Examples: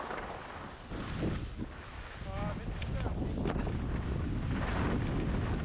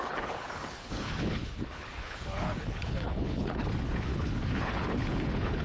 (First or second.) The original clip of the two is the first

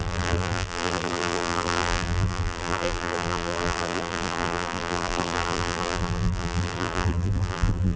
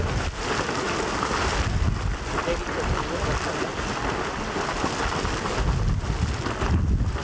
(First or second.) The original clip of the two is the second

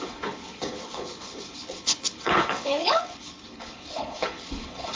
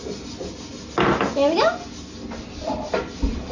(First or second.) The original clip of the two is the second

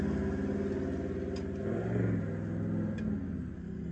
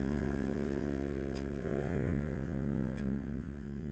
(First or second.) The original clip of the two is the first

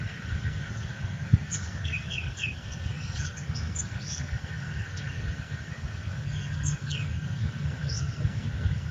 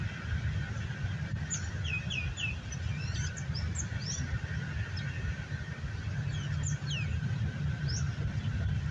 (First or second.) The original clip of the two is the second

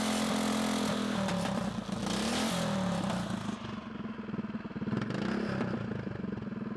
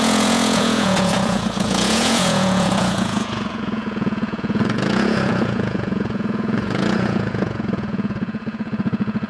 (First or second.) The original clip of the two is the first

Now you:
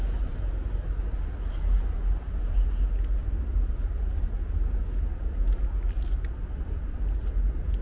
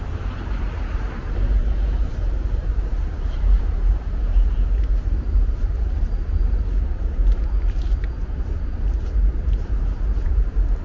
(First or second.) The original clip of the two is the first